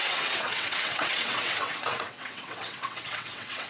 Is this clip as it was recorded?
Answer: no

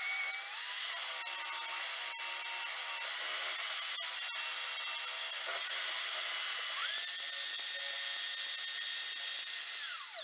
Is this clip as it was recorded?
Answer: yes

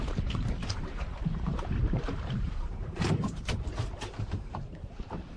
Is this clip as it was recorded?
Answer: no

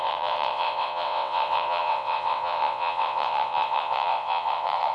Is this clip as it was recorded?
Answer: no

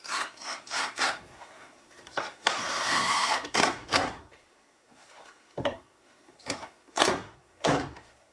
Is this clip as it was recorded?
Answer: no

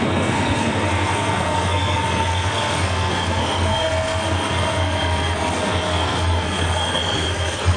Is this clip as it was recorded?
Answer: no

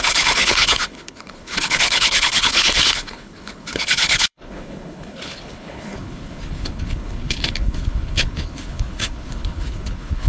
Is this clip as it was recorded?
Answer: no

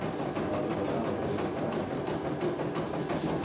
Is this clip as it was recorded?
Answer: yes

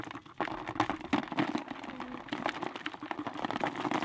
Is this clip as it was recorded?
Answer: yes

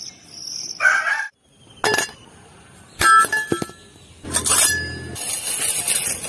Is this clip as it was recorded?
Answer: yes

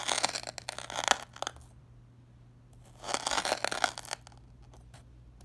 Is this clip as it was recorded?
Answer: yes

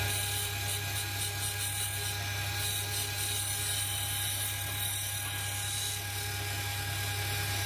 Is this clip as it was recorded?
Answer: yes